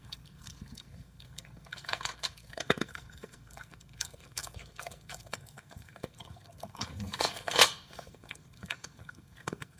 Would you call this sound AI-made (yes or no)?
yes